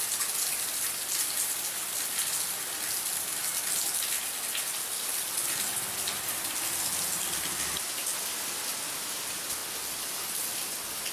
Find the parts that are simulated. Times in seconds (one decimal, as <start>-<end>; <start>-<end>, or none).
none